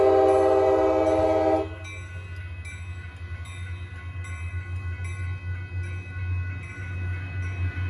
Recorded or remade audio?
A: recorded